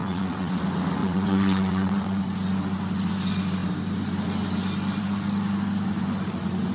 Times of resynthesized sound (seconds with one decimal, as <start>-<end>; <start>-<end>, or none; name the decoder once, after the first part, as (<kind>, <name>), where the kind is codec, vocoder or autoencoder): 0.0-0.6 (vocoder, WaveNeXt); 1.0-2.2